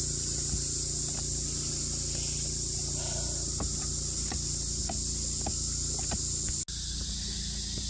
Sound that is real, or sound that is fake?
real